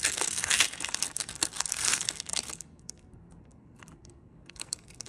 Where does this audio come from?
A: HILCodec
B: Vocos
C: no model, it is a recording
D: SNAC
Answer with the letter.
D